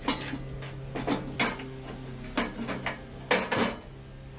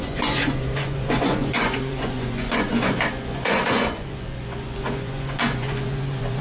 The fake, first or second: second